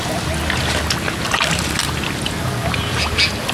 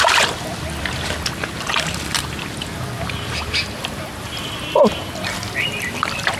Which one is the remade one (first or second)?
second